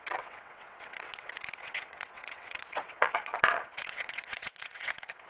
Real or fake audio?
fake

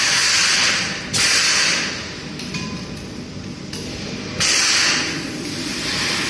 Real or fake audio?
real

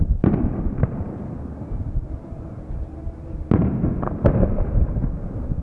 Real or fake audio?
real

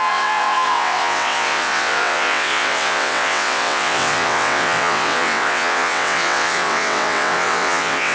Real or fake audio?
fake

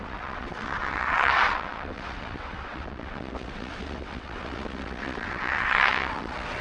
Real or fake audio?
fake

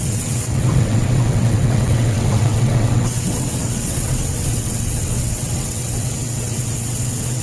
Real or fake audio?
fake